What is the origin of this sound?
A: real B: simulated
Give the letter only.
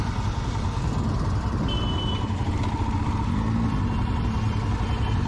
A